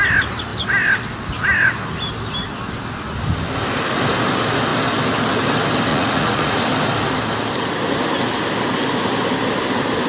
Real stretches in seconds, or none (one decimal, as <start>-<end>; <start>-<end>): 0.0-5.9; 6.6-10.1